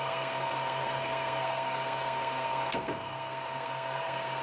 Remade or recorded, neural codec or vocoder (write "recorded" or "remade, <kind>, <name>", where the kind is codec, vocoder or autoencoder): remade, codec, SNAC